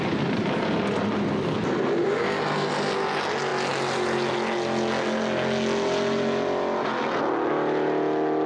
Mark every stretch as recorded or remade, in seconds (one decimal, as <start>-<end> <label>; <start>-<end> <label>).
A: 0.0-8.5 recorded